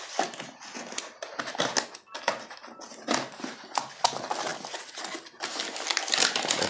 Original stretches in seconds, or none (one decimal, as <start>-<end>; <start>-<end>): 0.0-6.7